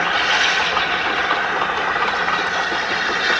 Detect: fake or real real